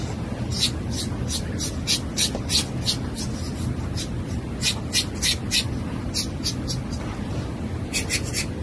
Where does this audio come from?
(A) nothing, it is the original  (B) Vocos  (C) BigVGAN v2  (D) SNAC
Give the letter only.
A